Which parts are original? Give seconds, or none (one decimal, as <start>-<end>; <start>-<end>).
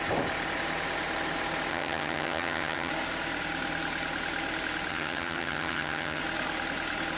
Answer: 0.0-1.7; 2.9-4.9; 6.2-7.2